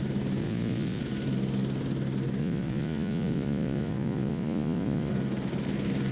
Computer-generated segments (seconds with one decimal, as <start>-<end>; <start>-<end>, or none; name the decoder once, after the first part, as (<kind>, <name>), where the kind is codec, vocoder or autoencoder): 0.4-1.0 (vocoder, Vocos); 2.4-5.1